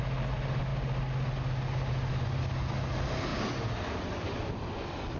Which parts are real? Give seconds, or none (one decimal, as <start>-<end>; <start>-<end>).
0.0-3.3; 4.5-5.2